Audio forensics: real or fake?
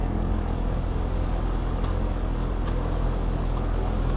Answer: fake